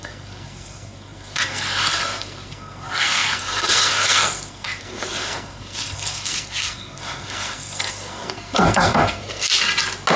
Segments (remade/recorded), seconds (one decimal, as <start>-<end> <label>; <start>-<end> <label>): 0.0-9.5 remade; 9.5-10.2 recorded